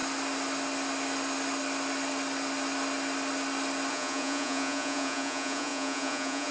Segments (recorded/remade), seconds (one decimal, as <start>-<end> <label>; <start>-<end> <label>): 0.0-3.9 recorded; 3.9-6.5 remade